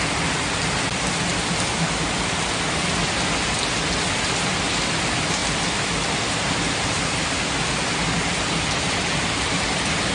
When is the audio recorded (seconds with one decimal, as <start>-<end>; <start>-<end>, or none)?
0.0-10.1